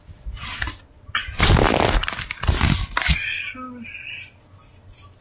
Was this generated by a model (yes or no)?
no